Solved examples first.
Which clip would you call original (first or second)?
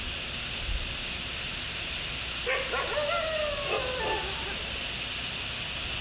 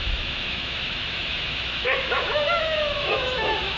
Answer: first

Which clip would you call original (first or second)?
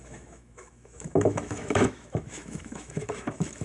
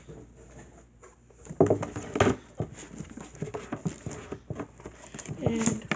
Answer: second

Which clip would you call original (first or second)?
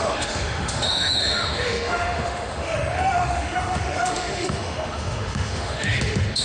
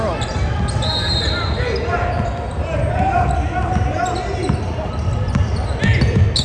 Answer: second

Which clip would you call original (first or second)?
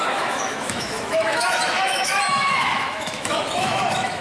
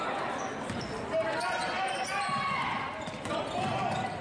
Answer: second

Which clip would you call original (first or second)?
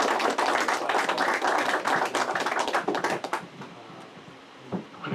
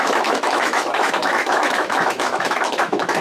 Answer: first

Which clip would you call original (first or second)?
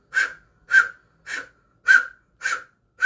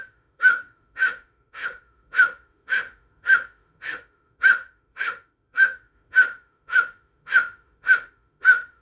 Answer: first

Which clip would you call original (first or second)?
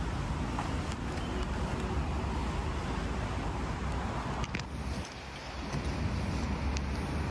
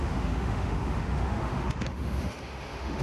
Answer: first